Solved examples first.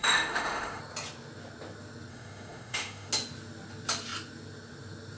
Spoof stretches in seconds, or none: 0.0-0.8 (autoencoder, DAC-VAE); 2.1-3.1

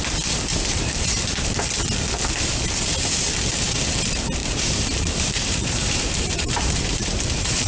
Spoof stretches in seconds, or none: 0.5-1.1 (vocoder, BigVGAN v2); 4.4-7.7

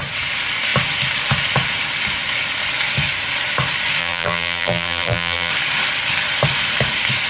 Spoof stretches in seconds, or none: 4.0-5.5 (vocoder, BigVGAN v2)

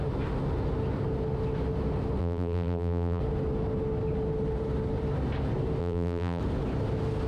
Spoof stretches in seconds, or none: 2.2-3.2 (vocoder, BigVGAN v2); 5.8-6.4

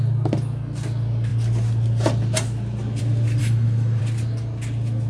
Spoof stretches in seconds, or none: 3.4-4.0 (autoencoder, DAC-VAE)